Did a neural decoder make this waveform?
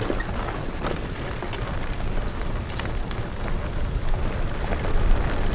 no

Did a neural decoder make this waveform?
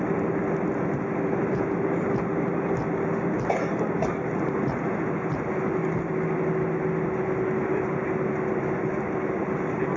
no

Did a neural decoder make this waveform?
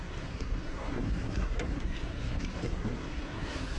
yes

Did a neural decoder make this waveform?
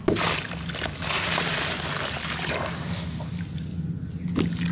no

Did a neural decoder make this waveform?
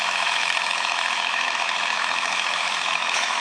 yes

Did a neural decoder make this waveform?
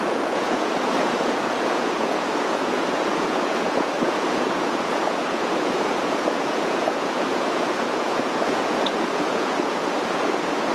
yes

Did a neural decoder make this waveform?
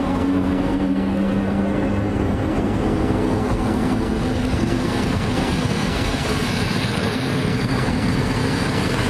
yes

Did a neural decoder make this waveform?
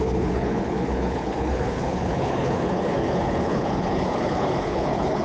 yes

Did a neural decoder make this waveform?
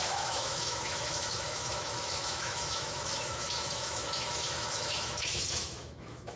yes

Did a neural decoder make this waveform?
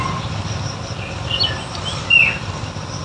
no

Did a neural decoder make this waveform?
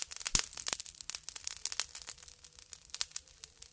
no